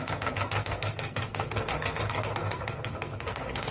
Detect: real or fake fake